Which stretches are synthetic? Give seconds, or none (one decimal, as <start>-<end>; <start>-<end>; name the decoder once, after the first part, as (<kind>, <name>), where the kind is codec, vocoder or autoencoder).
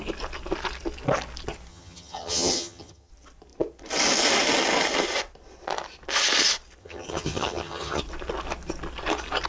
1.7-3.1 (vocoder, HiFi-GAN); 6.8-8.0